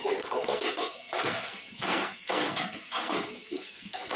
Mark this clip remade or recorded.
remade